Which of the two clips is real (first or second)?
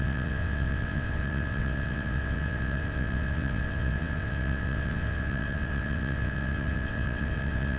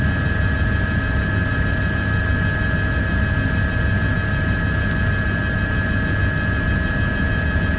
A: second